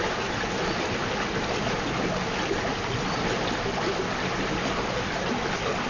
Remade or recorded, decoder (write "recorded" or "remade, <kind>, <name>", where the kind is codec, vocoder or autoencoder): recorded